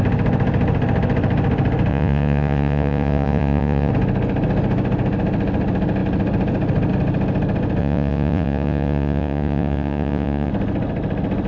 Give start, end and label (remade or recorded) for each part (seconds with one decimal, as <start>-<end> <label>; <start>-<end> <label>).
0.0-1.9 recorded; 1.9-3.9 remade; 3.9-7.8 recorded; 7.8-10.5 remade; 10.5-11.5 recorded